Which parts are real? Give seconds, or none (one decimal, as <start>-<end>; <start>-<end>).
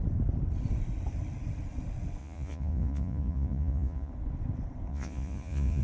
0.0-2.2; 4.1-4.9